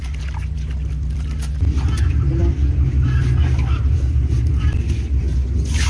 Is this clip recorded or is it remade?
recorded